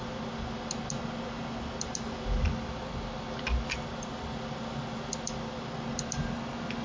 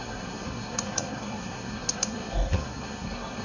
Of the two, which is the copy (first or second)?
second